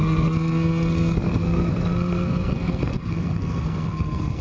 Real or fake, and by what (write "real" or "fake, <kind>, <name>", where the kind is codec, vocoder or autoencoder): fake, codec, SNAC